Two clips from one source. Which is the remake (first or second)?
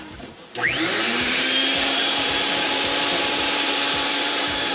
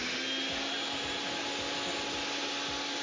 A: first